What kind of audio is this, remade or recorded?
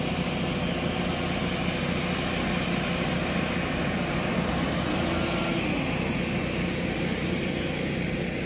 recorded